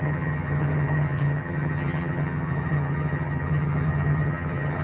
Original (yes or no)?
no